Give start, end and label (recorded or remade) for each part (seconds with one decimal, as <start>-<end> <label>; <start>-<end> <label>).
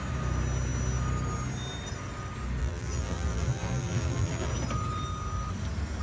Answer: 0.0-2.6 recorded; 2.6-4.5 remade; 4.5-6.0 recorded